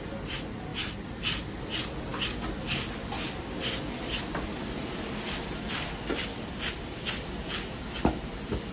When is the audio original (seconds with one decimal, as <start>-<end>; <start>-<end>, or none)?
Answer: 0.0-8.7